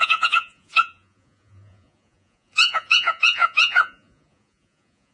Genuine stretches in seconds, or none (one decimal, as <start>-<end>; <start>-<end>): none